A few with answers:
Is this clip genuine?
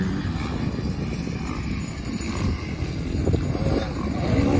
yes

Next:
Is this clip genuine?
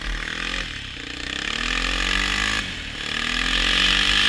yes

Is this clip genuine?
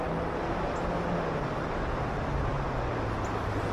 yes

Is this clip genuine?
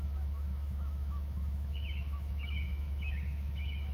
no